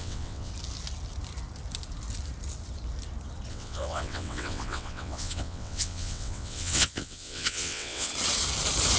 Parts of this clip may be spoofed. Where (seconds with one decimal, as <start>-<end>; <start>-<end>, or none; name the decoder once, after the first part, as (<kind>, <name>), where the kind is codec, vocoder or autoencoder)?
0.0-0.5 (vocoder, WaveNeXt); 3.5-8.1